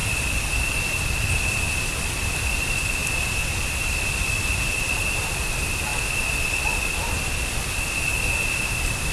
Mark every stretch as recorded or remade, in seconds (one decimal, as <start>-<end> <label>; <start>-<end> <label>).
0.0-2.1 recorded; 2.1-5.9 remade; 5.9-8.4 recorded; 8.4-9.1 remade